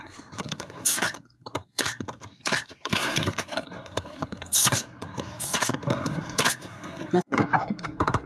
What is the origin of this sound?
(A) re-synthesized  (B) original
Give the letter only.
A